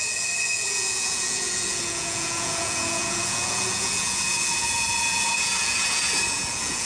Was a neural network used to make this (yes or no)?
yes